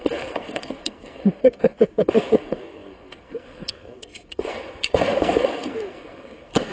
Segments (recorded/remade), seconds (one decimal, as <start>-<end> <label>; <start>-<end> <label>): 0.0-6.7 remade